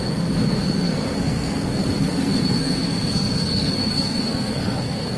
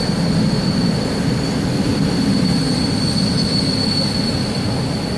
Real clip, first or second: second